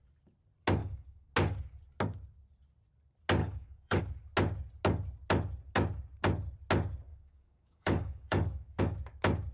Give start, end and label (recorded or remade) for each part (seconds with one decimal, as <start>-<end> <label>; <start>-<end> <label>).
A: 0.0-0.8 recorded; 0.8-1.3 remade; 1.3-3.4 recorded; 3.4-4.0 remade; 4.0-7.1 recorded; 7.1-8.8 remade; 8.8-9.5 recorded